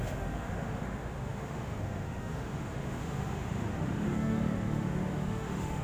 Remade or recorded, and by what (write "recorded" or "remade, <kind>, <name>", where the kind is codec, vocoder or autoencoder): remade, autoencoder, DAC-VAE